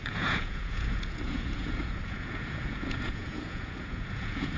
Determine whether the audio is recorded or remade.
remade